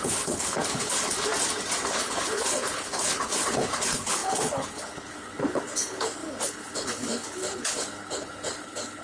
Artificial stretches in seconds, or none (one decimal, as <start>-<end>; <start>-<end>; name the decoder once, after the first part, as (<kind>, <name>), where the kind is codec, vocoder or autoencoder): 0.0-1.3 (codec, HILCodec); 1.9-9.0